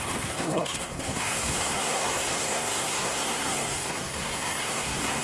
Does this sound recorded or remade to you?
remade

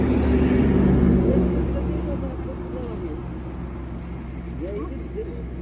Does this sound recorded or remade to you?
recorded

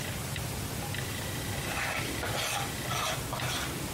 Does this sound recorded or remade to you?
recorded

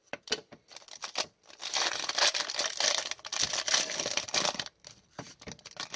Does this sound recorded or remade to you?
remade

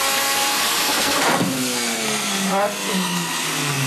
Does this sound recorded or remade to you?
remade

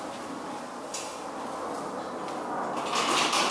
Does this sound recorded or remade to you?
recorded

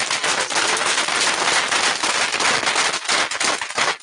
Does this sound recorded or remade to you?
recorded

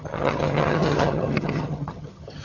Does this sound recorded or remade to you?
remade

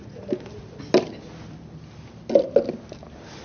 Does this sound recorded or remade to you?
recorded